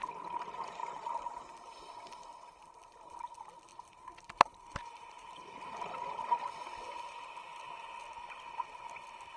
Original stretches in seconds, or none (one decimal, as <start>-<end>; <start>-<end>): 0.0-3.7; 5.5-9.4